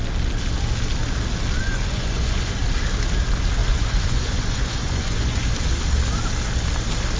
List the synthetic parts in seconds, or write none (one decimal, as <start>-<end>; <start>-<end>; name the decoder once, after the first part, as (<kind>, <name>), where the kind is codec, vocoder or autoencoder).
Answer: 1.6-2.6 (vocoder, Vocos); 3.6-5.5